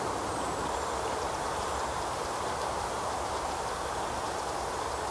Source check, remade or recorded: remade